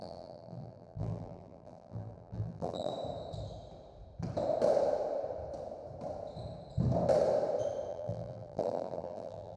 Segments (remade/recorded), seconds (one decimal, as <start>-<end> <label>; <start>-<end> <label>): 0.0-2.9 remade; 2.9-7.9 recorded; 7.9-9.6 remade